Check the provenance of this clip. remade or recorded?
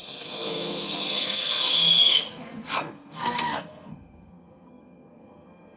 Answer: remade